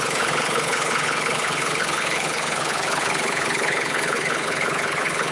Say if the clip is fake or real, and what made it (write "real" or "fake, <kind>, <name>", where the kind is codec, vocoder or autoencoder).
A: fake, codec, HILCodec